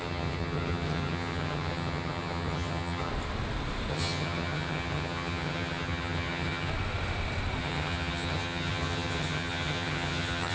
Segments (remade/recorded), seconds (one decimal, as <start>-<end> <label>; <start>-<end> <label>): 0.0-3.1 remade; 3.1-3.9 recorded; 3.9-6.7 remade; 6.7-7.6 recorded; 7.6-10.5 remade

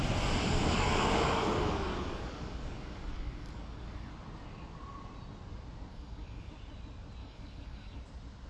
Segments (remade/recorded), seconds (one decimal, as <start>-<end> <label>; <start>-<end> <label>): 0.0-0.6 recorded; 0.6-4.1 remade; 4.1-5.9 recorded; 5.9-6.5 remade; 6.5-7.2 recorded; 7.2-8.0 remade; 8.0-8.5 recorded